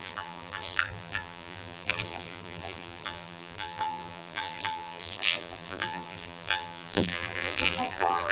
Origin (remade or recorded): remade